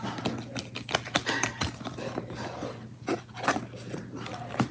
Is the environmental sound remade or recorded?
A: recorded